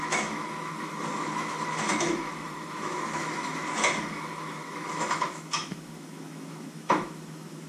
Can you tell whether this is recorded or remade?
remade